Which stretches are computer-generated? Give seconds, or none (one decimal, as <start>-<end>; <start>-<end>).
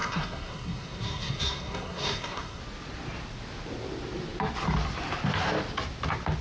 0.0-2.6